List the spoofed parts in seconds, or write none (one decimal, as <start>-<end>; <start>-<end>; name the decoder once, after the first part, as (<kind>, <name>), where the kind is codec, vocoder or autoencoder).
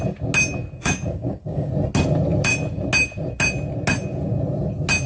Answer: 0.8-1.7 (codec, DAC)